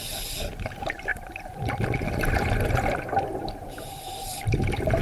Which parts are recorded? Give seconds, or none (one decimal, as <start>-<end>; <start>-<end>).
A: 0.0-1.1; 3.4-5.0